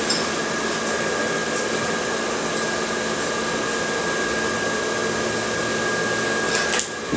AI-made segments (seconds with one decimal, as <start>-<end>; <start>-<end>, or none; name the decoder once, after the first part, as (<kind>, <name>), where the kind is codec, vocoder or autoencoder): none